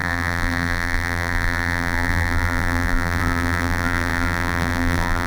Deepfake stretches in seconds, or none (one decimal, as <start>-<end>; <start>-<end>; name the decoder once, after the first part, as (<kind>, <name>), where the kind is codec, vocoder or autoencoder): 0.0-5.3 (vocoder, BigVGAN v2)